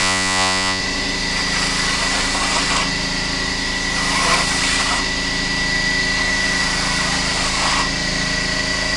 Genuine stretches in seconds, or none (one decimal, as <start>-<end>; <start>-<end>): 0.8-9.0